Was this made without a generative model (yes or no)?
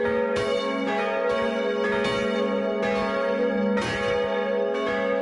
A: yes